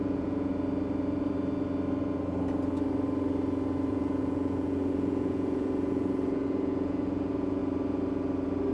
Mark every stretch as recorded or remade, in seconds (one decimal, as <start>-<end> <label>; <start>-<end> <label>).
0.0-0.5 remade; 0.5-3.9 recorded; 3.9-7.6 remade; 7.6-8.7 recorded